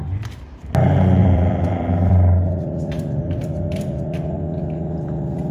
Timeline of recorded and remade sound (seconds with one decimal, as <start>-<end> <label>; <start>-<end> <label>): 0.0-1.2 recorded; 1.2-4.0 remade; 4.0-5.5 recorded